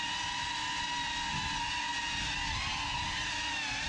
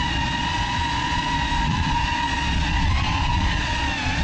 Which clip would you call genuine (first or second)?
first